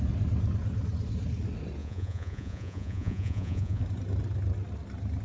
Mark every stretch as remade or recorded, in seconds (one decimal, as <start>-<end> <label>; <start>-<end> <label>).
0.0-1.8 recorded; 1.8-3.8 remade; 3.8-5.2 recorded